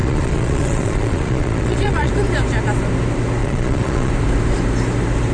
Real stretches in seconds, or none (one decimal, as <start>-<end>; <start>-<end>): 2.1-3.4; 4.1-5.3